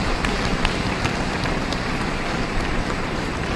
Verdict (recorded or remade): remade